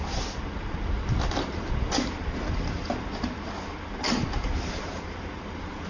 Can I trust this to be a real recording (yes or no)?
yes